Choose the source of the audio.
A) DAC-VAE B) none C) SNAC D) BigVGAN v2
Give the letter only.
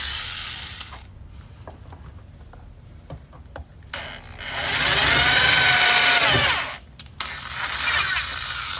B